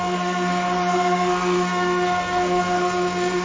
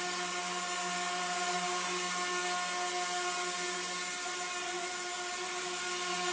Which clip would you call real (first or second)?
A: second